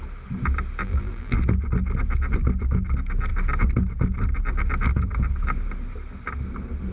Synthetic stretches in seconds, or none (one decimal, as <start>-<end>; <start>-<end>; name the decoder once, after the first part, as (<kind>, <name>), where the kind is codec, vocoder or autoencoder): 0.8-1.4 (vocoder, BigVGAN v2)